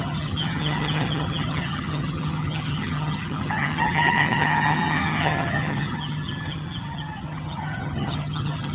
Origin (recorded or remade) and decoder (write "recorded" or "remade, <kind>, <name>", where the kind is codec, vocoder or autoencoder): remade, vocoder, HiFi-GAN